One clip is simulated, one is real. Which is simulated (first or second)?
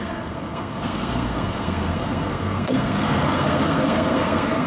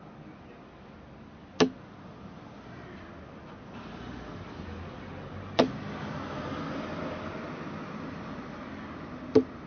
first